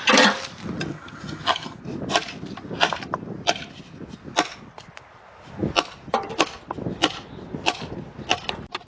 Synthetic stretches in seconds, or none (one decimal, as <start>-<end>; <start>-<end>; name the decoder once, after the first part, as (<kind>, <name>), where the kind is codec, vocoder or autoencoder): 0.9-1.8 (vocoder, HiFi-GAN)